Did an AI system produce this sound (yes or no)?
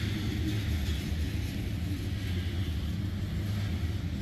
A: no